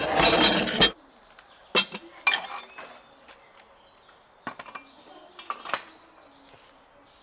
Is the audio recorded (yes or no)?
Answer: yes